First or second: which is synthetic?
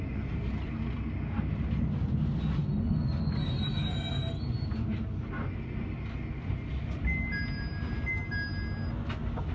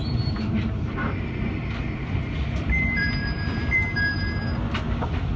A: second